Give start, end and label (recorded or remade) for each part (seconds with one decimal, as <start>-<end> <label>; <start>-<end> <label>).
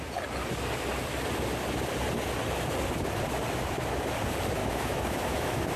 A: 0.0-4.6 recorded; 4.6-5.8 remade